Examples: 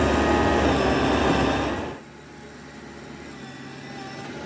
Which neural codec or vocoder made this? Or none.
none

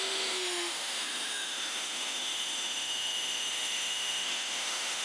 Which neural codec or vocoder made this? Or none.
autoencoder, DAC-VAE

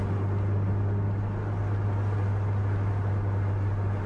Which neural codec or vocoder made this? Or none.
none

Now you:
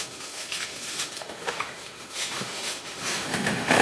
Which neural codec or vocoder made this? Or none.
autoencoder, DAC-VAE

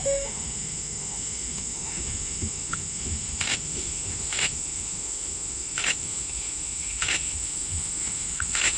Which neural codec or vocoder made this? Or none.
autoencoder, DAC-VAE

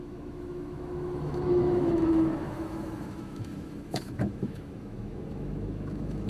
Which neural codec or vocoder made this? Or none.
autoencoder, DAC-VAE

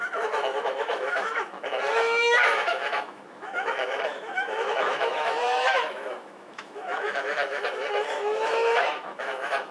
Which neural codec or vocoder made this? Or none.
autoencoder, DAC-VAE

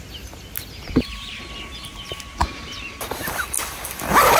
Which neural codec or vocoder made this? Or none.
none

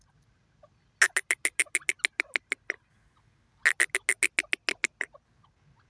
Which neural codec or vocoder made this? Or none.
none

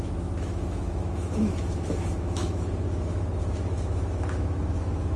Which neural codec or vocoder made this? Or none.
autoencoder, DAC-VAE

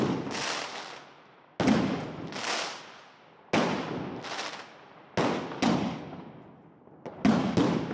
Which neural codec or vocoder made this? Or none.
none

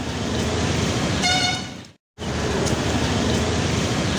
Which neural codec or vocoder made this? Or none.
none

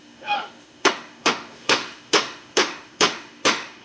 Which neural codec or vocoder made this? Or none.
autoencoder, DAC-VAE